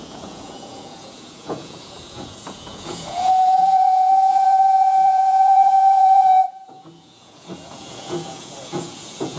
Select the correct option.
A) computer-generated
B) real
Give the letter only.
A